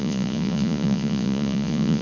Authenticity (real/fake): fake